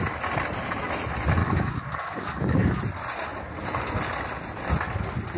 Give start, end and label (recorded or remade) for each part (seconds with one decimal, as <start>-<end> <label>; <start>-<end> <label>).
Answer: 0.0-1.4 recorded; 1.4-2.8 remade; 2.8-5.4 recorded